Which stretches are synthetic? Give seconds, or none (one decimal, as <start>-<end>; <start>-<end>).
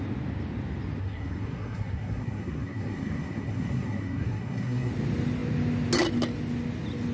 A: 1.0-4.9